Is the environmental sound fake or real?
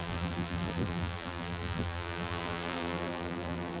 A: fake